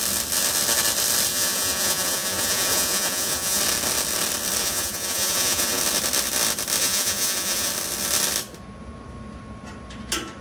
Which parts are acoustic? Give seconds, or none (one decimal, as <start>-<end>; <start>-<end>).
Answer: 0.0-1.3; 3.6-4.6; 5.8-6.8; 7.7-10.4